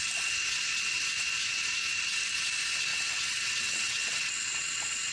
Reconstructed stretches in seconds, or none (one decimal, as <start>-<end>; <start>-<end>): 2.9-5.1